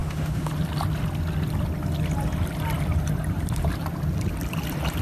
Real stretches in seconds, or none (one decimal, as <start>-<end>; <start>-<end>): 0.5-5.0